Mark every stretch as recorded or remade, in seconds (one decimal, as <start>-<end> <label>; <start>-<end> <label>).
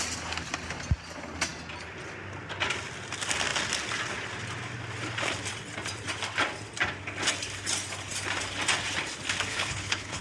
0.0-9.5 recorded; 9.5-10.2 remade